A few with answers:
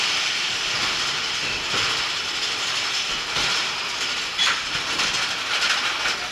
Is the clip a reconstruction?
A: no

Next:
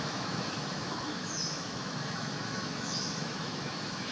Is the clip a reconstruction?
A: yes